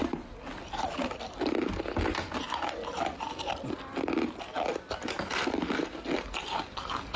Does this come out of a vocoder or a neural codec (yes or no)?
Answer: no